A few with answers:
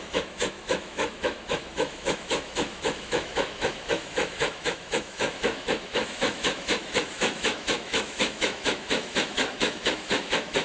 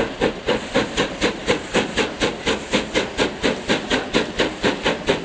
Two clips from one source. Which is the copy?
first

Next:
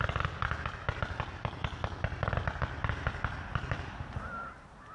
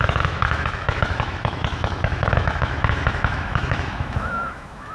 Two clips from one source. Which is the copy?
second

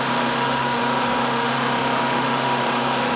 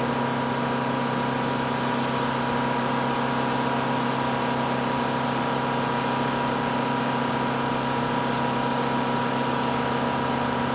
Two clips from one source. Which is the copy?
first